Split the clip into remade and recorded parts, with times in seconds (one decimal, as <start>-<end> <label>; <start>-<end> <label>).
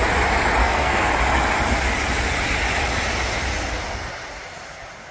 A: 0.0-0.6 recorded; 0.6-1.1 remade; 1.1-5.1 recorded